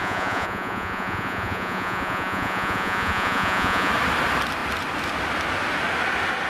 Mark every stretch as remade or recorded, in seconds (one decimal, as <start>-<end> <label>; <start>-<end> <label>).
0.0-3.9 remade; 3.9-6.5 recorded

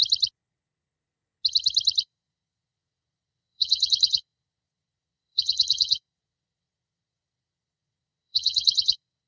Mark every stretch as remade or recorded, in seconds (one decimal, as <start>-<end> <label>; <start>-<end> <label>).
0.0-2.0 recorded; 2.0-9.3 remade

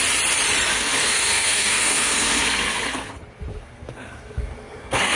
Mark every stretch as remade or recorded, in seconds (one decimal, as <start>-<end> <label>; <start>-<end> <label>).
0.0-0.7 recorded; 0.7-3.1 remade; 3.1-3.5 recorded; 3.5-5.2 remade

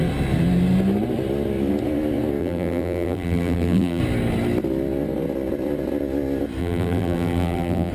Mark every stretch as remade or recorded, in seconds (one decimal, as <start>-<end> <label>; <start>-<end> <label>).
0.0-2.4 recorded; 2.4-4.0 remade; 4.0-6.6 recorded; 6.6-7.9 remade

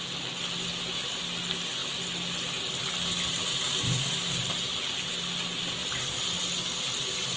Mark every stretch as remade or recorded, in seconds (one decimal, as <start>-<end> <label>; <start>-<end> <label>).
0.0-1.8 recorded; 1.8-4.4 remade; 4.4-7.4 recorded

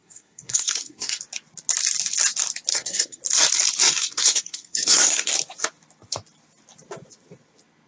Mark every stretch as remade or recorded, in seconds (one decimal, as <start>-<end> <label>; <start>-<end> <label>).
0.0-1.2 remade; 1.2-2.7 recorded; 2.7-3.2 remade; 3.2-3.8 recorded; 3.8-5.3 remade; 5.3-7.9 recorded

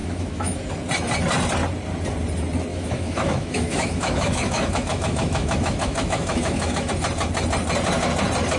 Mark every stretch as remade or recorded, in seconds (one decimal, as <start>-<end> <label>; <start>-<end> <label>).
0.0-0.7 remade; 0.7-2.7 recorded; 2.7-6.9 remade; 6.9-8.6 recorded